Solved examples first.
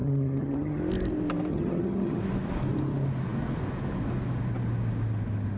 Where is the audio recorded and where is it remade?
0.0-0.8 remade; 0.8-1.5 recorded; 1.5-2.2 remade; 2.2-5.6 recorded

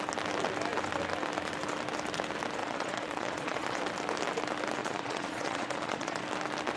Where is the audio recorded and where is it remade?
0.0-2.6 recorded; 2.6-3.8 remade; 3.8-4.8 recorded; 4.8-6.2 remade; 6.2-6.8 recorded